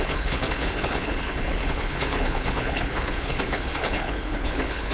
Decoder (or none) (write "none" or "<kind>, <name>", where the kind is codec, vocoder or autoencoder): codec, HILCodec